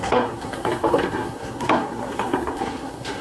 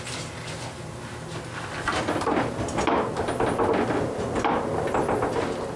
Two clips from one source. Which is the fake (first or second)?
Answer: first